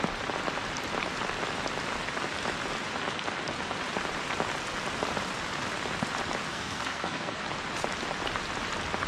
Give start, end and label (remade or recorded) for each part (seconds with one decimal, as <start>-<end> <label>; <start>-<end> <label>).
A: 0.0-6.5 recorded; 6.5-7.4 remade; 7.4-9.1 recorded